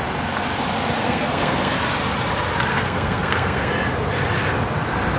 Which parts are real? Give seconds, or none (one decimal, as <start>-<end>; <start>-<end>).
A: 0.0-1.0; 1.7-2.7; 3.7-5.2